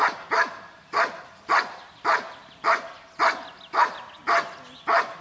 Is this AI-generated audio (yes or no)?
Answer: no